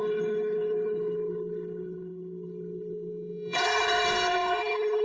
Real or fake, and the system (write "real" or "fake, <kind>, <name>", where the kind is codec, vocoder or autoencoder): fake, codec, HILCodec